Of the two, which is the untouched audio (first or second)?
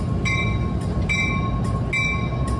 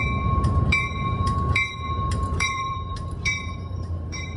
first